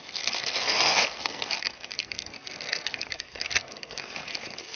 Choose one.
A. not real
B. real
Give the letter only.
A